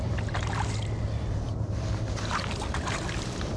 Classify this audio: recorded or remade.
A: remade